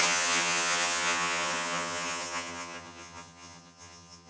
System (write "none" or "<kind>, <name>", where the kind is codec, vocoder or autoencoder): vocoder, HiFi-GAN